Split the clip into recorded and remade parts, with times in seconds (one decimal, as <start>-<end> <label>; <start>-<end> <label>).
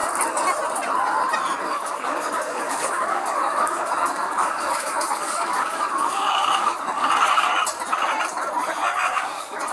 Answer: 0.0-1.6 recorded; 1.6-7.5 remade; 7.5-9.1 recorded; 9.1-9.7 remade